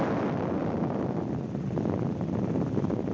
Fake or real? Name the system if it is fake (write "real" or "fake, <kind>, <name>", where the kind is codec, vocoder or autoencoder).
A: real